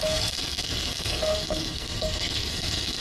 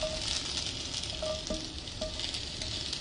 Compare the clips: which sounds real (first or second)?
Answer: second